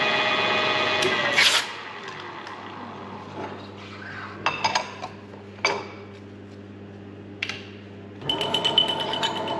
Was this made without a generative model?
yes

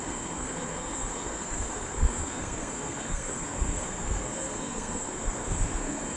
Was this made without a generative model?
no